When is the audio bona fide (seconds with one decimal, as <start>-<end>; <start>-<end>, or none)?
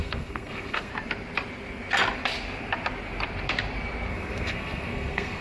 0.9-4.1